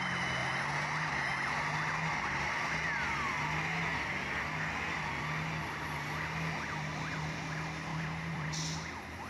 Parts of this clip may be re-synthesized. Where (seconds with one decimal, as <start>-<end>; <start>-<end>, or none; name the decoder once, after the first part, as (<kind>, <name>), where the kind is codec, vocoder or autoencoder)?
7.9-8.5 (vocoder, BigVGAN v2)